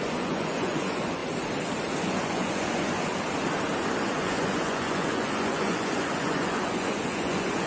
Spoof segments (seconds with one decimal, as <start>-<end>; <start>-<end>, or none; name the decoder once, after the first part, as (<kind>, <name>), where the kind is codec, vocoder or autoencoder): 0.0-1.2 (vocoder, Vocos); 2.0-3.1; 4.0-7.7